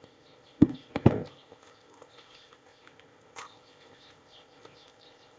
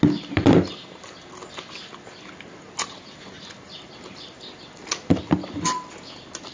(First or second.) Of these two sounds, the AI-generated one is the first